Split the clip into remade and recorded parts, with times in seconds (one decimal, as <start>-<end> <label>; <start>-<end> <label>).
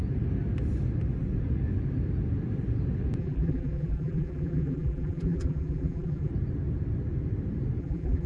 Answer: 0.0-3.2 recorded; 3.2-6.3 remade; 6.3-7.8 recorded; 7.8-8.3 remade